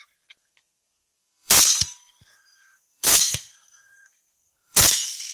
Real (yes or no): no